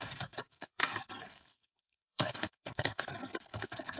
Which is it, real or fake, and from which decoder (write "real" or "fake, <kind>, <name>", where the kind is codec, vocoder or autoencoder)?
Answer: fake, codec, SNAC